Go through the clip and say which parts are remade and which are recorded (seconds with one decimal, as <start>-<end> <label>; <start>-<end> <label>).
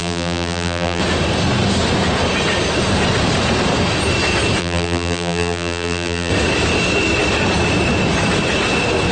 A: 0.0-1.0 remade; 1.0-4.6 recorded; 4.6-6.3 remade; 6.3-9.1 recorded